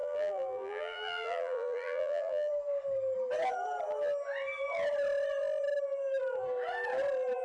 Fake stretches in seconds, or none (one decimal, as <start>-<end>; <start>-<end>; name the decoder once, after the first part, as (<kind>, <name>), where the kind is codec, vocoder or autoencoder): 0.0-2.5 (vocoder, BigVGAN v2)